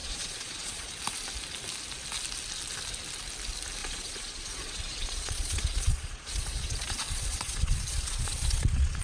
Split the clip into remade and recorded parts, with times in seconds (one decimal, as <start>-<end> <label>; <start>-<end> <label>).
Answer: 0.0-0.9 remade; 0.9-3.8 recorded; 3.8-9.0 remade